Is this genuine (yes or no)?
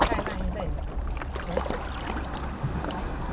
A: yes